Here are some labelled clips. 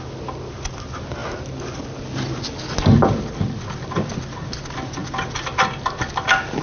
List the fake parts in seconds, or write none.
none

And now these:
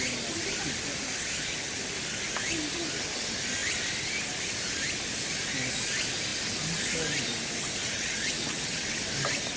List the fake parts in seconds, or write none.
7.8-9.0 (vocoder, WaveNeXt)

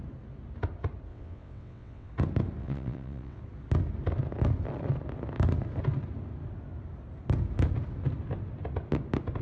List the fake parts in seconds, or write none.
1.1-2.1 (vocoder, WaveNeXt); 2.6-3.4

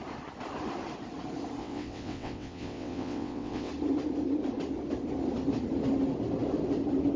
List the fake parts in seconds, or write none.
1.6-3.7 (vocoder, WaveNeXt)

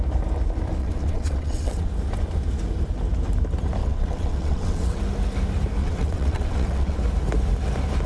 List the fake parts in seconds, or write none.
0.8-1.9 (vocoder, WaveNeXt); 3.8-5.0; 5.8-7.0

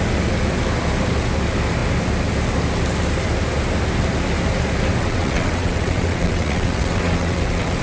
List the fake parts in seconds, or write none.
5.0-7.8 (vocoder, WaveNeXt)

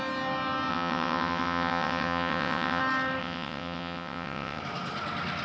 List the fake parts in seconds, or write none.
0.7-2.8 (vocoder, WaveNeXt); 3.2-4.6

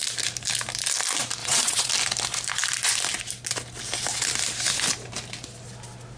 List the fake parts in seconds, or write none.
1.4-1.9 (vocoder, WaveNeXt)